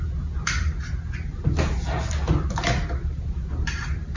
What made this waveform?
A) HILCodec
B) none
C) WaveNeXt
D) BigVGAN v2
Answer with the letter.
B